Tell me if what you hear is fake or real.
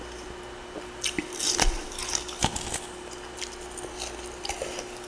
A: real